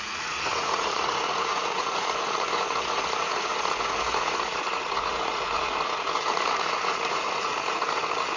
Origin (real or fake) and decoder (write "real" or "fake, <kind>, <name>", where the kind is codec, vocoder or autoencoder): fake, vocoder, Vocos